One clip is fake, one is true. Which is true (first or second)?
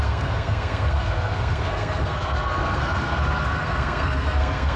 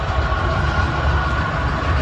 second